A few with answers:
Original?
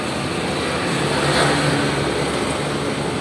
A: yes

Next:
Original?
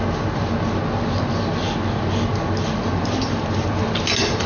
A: yes